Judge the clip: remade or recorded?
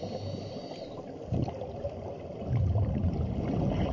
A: recorded